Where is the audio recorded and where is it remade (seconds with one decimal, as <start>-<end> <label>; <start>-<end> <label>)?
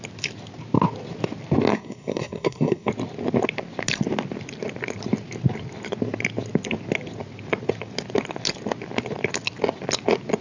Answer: 0.0-1.7 recorded; 1.7-2.9 remade; 2.9-10.4 recorded